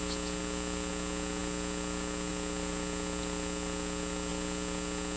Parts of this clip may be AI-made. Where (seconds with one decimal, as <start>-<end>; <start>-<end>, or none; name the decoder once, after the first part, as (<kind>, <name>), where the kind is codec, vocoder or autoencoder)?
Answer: none